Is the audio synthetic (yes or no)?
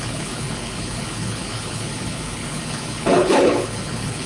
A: yes